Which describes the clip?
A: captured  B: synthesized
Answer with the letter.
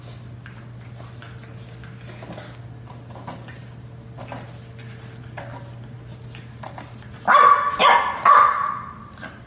A